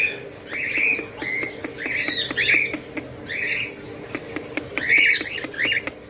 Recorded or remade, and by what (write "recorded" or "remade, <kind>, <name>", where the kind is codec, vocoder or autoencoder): recorded